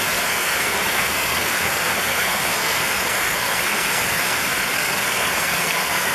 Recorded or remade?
remade